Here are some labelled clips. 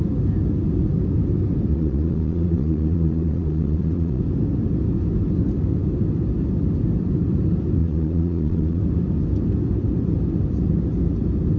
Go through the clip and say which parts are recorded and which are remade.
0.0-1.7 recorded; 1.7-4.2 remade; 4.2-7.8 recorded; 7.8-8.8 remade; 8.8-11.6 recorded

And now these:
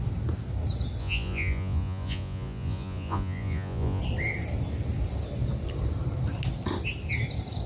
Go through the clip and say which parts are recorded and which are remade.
0.0-1.0 recorded; 1.0-4.0 remade; 4.0-7.7 recorded

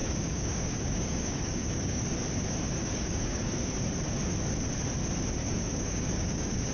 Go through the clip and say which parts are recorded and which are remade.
0.0-2.0 remade; 2.0-2.8 recorded; 2.8-3.5 remade; 3.5-5.4 recorded; 5.4-6.7 remade